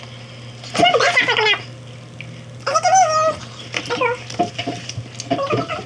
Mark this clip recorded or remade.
recorded